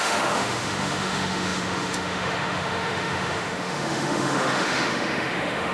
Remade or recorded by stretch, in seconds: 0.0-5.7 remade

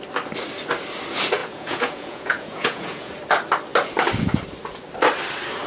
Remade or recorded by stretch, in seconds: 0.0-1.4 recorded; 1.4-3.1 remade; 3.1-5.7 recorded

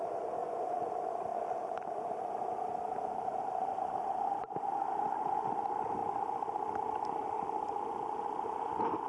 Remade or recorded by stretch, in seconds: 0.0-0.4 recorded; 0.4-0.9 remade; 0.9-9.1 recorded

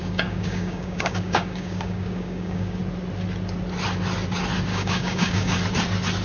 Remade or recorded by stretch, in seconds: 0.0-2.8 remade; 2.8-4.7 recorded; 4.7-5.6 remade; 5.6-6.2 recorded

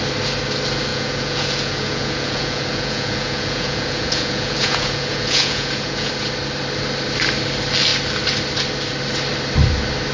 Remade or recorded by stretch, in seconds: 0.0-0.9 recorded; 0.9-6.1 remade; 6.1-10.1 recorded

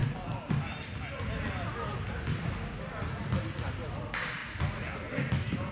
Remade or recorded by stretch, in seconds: 0.0-5.7 recorded